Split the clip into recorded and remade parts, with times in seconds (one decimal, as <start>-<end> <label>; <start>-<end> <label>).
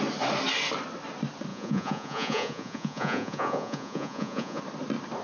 0.0-1.5 recorded; 1.5-4.6 remade; 4.6-5.2 recorded